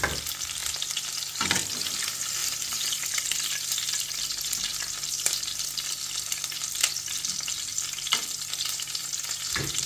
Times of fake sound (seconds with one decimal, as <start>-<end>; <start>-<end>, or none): 0.6-1.6; 7.7-9.2